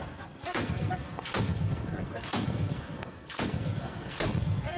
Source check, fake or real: fake